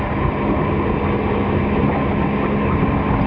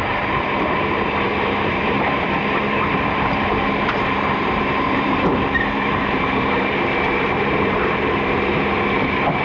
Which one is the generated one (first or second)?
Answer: second